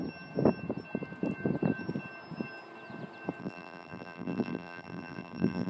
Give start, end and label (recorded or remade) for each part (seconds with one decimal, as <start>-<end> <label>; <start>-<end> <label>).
0.0-3.4 recorded; 3.4-5.7 remade